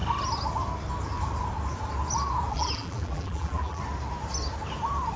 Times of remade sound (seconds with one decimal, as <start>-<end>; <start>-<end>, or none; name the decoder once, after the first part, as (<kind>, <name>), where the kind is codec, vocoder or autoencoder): 2.5-3.8 (vocoder, BigVGAN v2)